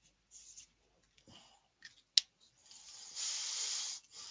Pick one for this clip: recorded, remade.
recorded